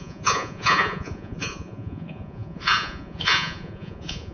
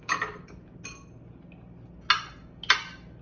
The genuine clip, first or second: second